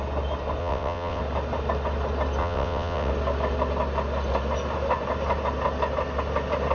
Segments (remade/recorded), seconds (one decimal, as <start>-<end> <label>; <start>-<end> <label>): 0.0-0.6 recorded; 0.6-1.2 remade; 1.2-2.4 recorded; 2.4-3.1 remade; 3.1-6.7 recorded